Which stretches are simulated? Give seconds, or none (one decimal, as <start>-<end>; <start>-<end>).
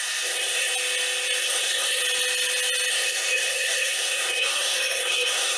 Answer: 0.0-0.7; 1.4-2.0; 2.9-5.6